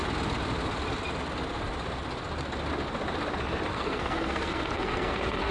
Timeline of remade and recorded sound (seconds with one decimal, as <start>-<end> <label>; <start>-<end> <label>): 0.0-3.7 recorded; 3.7-5.5 remade